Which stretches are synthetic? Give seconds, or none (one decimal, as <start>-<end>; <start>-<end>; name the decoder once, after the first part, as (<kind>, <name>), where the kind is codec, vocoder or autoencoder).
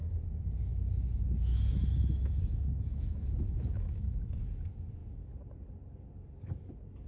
1.5-4.4 (autoencoder, DAC-VAE)